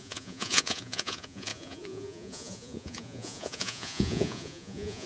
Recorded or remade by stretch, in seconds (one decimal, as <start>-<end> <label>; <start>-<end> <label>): 0.0-5.1 remade